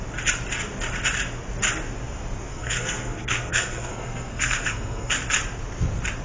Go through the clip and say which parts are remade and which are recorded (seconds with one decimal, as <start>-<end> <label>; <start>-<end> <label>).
0.0-2.5 recorded; 2.5-5.2 remade; 5.2-6.2 recorded